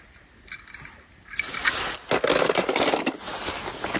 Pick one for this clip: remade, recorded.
recorded